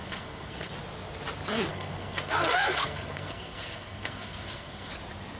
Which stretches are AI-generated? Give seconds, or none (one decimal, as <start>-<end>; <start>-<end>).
0.0-0.7; 1.7-4.9